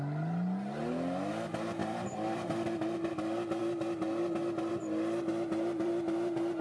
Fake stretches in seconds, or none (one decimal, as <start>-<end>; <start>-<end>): 1.8-3.1; 5.3-5.9